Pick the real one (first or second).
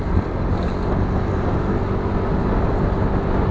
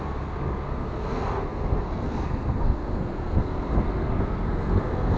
first